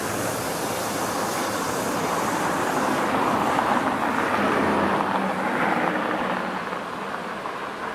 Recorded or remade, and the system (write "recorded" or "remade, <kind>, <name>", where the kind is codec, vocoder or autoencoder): recorded